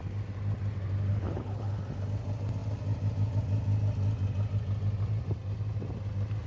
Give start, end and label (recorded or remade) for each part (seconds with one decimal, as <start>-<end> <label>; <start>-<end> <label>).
0.0-1.1 recorded; 1.1-1.8 remade; 1.8-6.5 recorded